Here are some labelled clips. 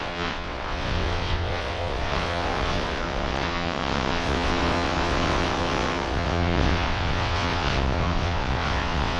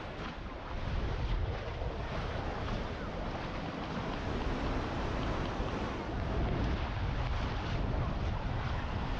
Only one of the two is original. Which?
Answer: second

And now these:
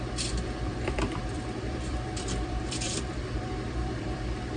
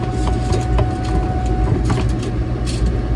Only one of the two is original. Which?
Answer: second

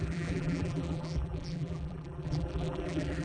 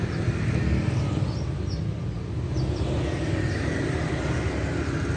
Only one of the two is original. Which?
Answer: second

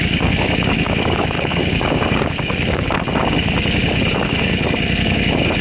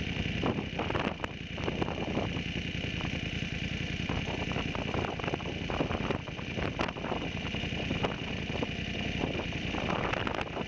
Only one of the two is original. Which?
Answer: second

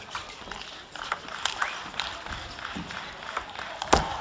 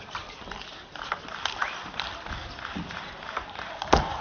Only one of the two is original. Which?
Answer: first